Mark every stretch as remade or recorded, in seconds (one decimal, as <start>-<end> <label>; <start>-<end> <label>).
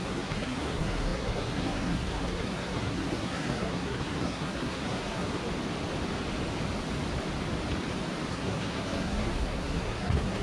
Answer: 0.0-5.4 remade; 5.4-8.3 recorded; 8.3-10.4 remade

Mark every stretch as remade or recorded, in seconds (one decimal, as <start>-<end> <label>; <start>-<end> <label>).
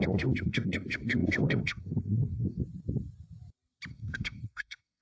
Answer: 0.0-2.6 remade; 2.6-3.9 recorded; 3.9-5.0 remade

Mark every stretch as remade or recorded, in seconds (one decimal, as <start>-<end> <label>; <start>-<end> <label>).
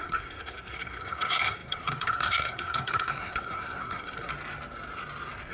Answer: 0.0-4.3 remade; 4.3-5.5 recorded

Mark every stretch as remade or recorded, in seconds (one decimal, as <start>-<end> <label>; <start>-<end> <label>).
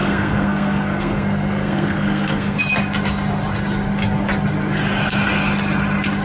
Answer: 0.0-2.6 remade; 2.6-6.2 recorded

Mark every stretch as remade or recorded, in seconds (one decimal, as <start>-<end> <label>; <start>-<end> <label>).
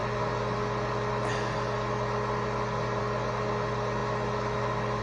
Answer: 0.0-5.0 recorded